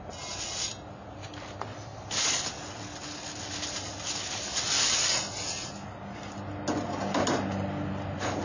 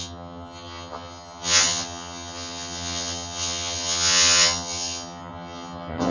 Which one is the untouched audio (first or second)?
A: first